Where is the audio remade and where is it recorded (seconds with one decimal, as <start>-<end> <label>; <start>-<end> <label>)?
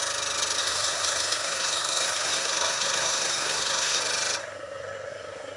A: 0.0-0.6 recorded; 0.6-4.0 remade; 4.0-4.4 recorded; 4.4-5.6 remade